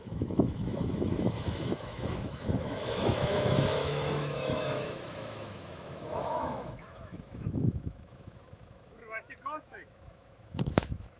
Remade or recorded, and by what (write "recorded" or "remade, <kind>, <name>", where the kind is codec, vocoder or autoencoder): remade, autoencoder, DAC-VAE